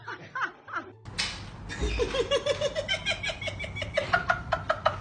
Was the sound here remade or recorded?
recorded